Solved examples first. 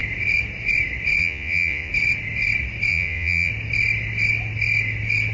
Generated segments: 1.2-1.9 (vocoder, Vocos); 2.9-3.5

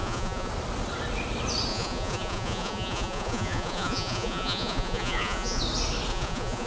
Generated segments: 0.0-0.5 (vocoder, Vocos); 1.7-5.6; 6.1-6.7

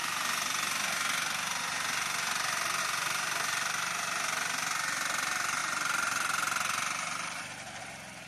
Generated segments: none

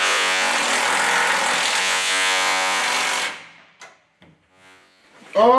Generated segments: 0.0-0.5 (vocoder, Vocos); 1.8-2.8; 4.5-5.0

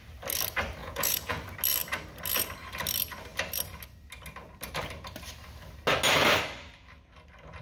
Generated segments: 0.8-1.4 (vocoder, Vocos)